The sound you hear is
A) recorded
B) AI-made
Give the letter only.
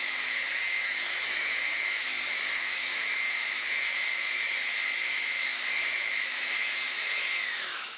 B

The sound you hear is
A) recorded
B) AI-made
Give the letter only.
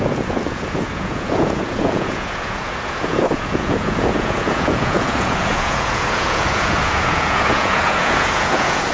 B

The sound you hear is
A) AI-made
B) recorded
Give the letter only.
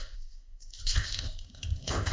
A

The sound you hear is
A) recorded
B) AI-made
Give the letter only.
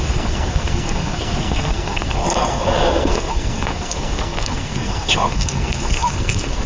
B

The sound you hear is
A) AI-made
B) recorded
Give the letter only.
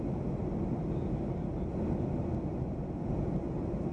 B